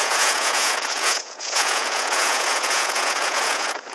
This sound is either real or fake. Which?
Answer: fake